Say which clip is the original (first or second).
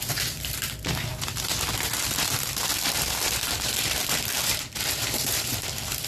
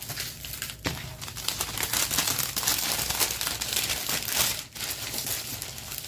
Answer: second